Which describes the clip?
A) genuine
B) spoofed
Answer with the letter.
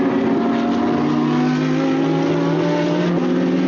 A